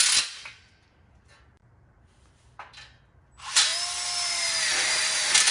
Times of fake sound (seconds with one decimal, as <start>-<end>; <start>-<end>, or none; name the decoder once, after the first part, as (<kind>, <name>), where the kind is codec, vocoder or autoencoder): none